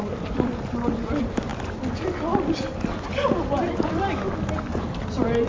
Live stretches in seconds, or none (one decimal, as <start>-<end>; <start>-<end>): 0.0-5.5